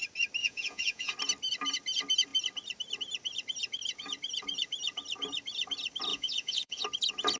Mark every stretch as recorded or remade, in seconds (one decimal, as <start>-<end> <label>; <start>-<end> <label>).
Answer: 0.0-0.4 recorded; 0.4-1.1 remade; 1.1-6.1 recorded; 6.1-6.8 remade; 6.8-7.4 recorded